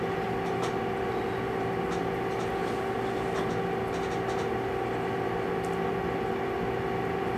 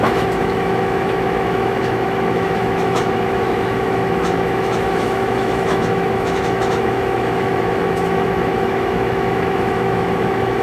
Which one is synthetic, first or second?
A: second